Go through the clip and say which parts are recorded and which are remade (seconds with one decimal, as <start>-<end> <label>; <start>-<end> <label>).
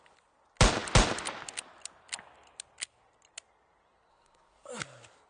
0.0-4.1 recorded; 4.1-4.8 remade; 4.8-5.3 recorded